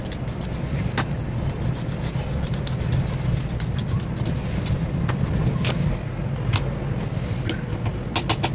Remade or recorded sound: recorded